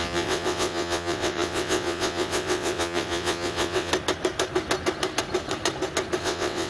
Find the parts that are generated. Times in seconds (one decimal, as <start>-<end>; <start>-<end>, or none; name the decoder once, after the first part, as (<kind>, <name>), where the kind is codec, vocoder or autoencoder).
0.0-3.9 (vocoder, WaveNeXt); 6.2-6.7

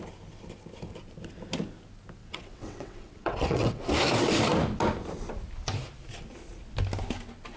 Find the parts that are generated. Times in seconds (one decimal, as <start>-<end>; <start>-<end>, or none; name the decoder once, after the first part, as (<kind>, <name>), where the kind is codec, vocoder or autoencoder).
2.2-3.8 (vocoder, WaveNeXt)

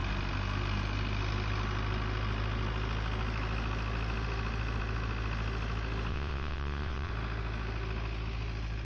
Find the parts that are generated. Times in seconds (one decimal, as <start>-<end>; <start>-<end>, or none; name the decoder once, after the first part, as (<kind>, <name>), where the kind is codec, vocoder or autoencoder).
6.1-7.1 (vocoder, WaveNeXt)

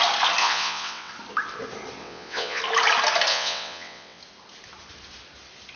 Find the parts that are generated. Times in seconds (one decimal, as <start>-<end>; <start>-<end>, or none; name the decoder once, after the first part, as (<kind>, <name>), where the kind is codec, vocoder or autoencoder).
0.4-1.1 (vocoder, WaveNeXt); 2.0-2.6; 3.3-4.2

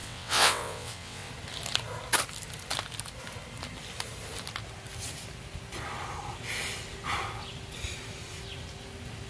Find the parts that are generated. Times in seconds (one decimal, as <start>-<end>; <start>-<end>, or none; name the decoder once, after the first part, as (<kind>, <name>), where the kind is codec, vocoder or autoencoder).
0.0-1.3 (vocoder, WaveNeXt)

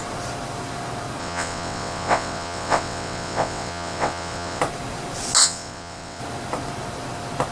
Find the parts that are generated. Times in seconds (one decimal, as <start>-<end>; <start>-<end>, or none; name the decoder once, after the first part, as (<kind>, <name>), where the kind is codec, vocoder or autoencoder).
1.2-4.6 (vocoder, WaveNeXt); 5.4-6.2